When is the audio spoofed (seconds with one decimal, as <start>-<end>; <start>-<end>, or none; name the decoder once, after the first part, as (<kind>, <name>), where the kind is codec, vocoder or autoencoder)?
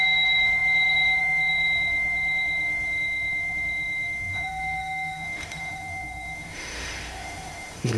0.0-8.0 (autoencoder, DAC-VAE)